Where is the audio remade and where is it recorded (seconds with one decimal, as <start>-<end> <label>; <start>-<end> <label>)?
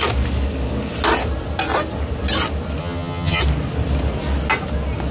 0.0-2.8 recorded; 2.8-3.4 remade; 3.4-5.1 recorded